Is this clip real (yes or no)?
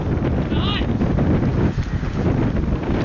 yes